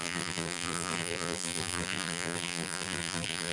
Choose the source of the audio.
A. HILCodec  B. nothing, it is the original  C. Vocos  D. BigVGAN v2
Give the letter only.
D